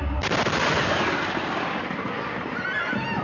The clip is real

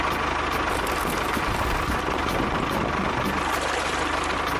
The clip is real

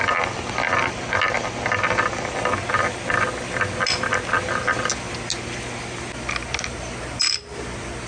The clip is real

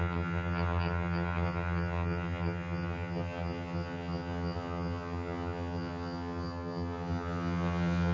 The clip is fake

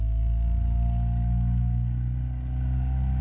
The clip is fake